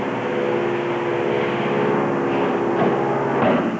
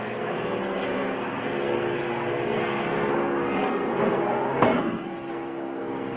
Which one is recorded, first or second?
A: first